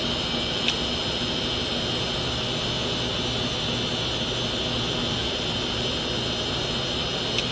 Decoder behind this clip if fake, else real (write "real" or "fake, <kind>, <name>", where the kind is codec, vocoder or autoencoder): real